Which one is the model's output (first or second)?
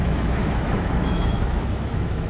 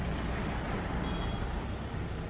first